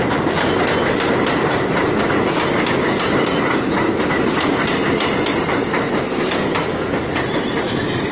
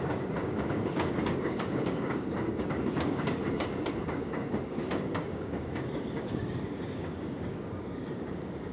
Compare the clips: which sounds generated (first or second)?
second